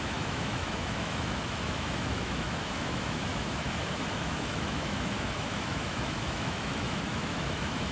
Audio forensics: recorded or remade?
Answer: remade